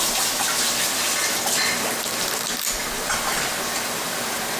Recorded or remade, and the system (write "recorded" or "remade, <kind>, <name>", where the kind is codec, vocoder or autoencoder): recorded